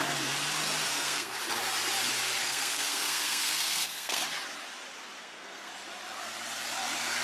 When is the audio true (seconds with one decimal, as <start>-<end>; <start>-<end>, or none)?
0.0-0.9; 1.4-2.4; 4.2-5.2; 5.7-7.2